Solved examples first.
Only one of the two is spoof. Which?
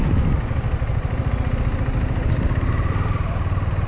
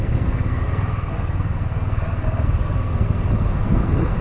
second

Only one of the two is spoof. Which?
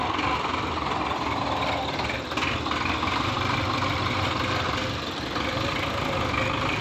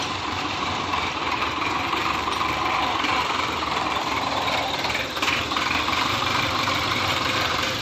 second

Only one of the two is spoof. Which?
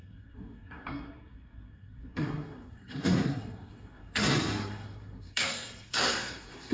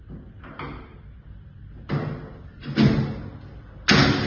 first